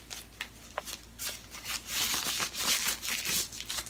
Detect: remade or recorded recorded